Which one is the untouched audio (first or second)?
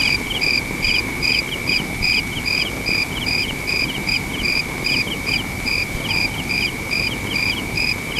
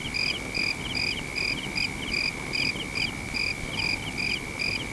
second